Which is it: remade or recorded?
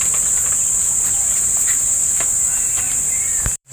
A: remade